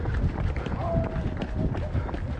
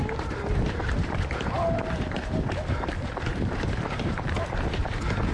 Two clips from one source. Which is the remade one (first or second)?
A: second